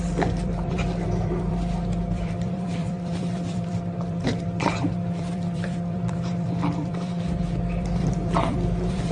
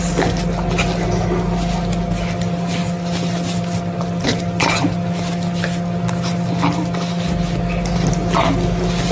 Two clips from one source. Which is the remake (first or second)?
first